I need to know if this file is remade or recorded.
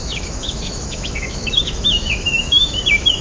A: remade